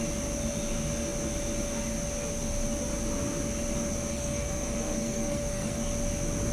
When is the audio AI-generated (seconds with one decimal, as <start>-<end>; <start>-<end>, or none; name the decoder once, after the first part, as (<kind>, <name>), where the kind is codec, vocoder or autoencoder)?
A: 4.1-5.8 (codec, SNAC)